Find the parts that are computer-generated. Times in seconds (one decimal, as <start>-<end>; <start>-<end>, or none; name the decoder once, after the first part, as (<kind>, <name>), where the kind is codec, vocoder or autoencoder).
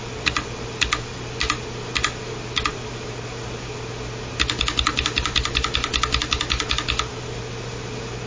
none